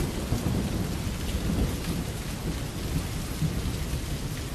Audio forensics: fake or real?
real